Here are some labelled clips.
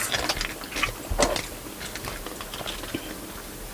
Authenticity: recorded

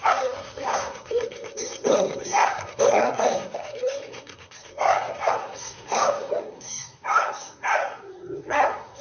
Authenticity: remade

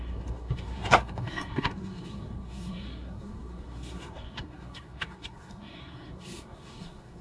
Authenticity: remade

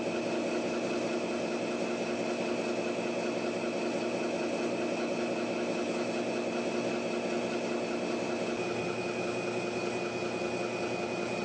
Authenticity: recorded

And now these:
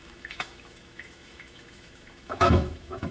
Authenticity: remade